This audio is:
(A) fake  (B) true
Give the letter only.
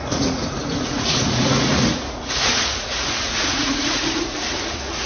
A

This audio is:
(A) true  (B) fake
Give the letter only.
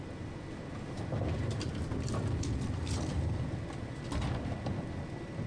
A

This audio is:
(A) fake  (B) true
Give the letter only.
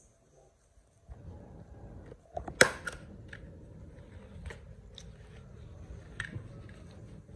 B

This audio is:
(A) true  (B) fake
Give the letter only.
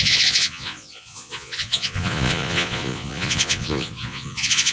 B